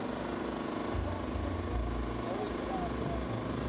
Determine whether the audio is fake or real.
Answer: real